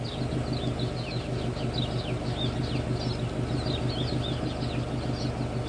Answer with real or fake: real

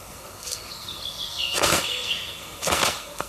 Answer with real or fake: fake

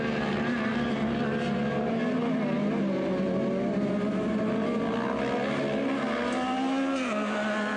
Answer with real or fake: real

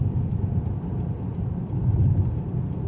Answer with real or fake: real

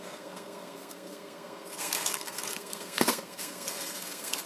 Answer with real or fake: fake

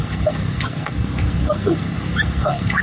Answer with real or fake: fake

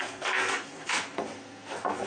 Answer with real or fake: fake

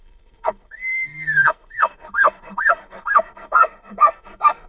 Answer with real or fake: fake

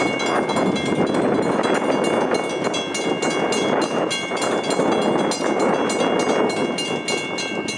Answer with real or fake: real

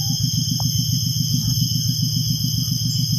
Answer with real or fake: real